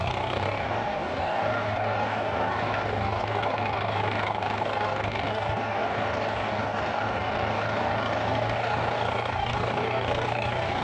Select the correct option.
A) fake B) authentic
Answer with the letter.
A